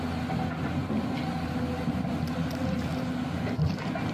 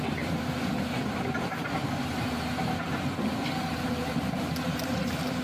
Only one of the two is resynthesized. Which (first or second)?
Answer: second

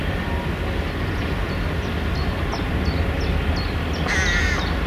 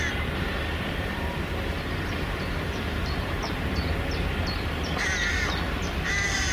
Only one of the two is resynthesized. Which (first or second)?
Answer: second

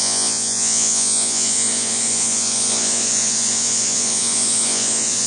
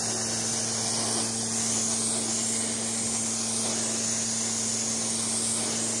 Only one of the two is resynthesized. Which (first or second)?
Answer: first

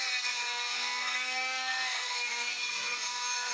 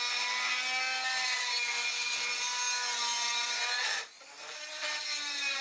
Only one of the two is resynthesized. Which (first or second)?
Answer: first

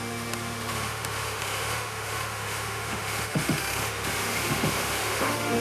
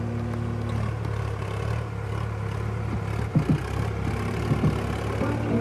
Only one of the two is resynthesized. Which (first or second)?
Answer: first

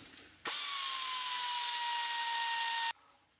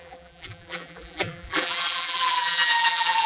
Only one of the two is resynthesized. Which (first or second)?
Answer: second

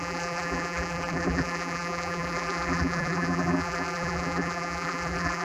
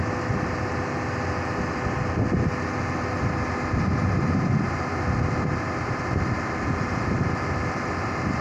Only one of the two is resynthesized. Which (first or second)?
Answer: first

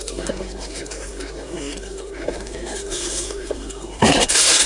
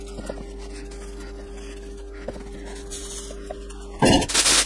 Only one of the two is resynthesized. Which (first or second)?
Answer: first